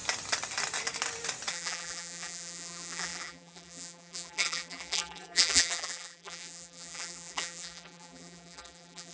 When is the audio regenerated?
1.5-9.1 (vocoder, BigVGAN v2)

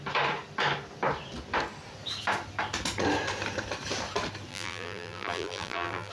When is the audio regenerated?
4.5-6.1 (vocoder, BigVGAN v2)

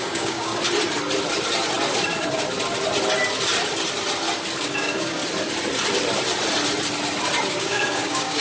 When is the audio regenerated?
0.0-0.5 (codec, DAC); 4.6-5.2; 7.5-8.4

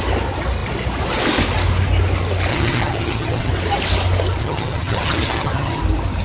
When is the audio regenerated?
2.5-3.5 (vocoder, HiFi-GAN); 4.4-5.8

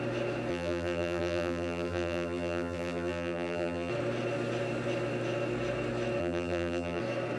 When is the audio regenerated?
0.5-3.9 (vocoder, BigVGAN v2); 6.2-7.0

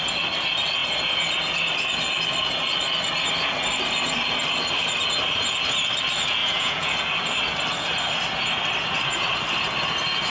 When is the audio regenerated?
6.4-6.9 (vocoder, Vocos)

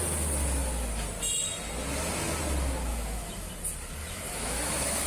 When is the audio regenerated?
2.9-3.5 (autoencoder, DAC-VAE); 4.0-5.1

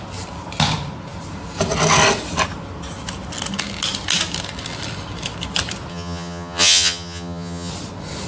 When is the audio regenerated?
5.9-7.7 (vocoder, HiFi-GAN)